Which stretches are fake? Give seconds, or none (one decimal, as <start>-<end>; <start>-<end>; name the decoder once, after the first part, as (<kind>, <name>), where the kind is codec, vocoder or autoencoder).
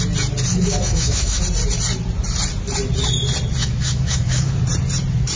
0.5-1.4 (autoencoder, DAC-VAE); 3.6-4.6